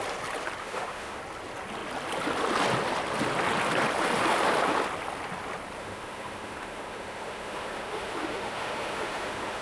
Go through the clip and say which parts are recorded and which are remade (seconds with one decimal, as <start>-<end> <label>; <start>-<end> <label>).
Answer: 0.0-0.6 recorded; 0.6-1.2 remade; 1.2-5.8 recorded; 5.8-9.6 remade